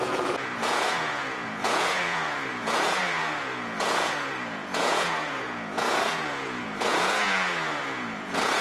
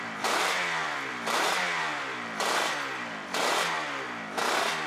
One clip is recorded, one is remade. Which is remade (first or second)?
first